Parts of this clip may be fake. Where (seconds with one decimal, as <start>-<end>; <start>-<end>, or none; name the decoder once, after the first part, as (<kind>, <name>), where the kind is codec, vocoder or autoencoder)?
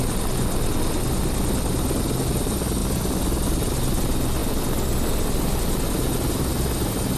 none